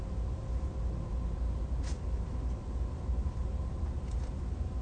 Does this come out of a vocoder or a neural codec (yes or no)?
no